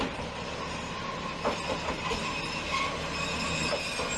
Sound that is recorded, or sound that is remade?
recorded